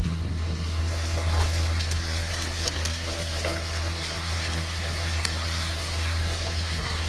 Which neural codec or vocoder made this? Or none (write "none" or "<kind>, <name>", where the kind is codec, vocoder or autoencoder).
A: codec, SNAC